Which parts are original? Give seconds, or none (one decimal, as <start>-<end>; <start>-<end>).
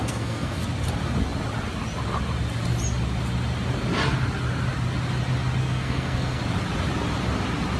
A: 0.6-5.6; 6.4-7.8